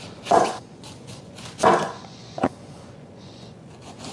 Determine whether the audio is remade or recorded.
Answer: remade